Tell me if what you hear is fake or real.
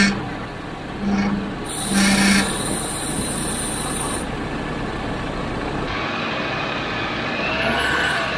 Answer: real